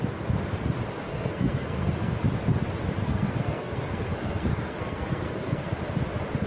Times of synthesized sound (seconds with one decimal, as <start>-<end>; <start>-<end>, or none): 1.1-2.1; 3.0-5.7

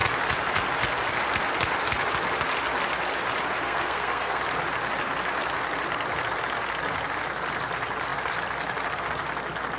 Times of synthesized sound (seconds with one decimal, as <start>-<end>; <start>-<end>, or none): 3.6-4.4

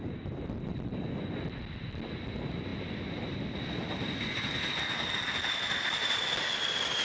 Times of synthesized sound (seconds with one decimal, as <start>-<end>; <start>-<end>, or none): none

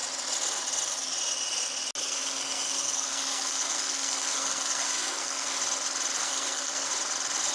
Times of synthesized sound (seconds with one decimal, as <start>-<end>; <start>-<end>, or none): 2.0-5.6; 6.2-6.9

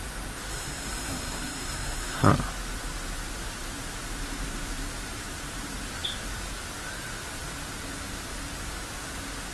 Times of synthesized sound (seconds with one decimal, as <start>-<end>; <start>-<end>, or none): 0.5-2.3